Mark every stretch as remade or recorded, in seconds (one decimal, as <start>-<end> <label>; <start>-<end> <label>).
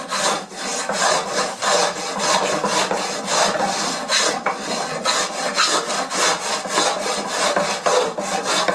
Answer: 0.0-8.7 recorded